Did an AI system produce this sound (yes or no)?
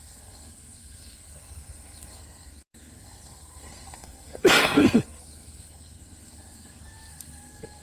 yes